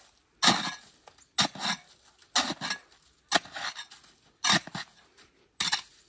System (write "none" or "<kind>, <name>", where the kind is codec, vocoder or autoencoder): none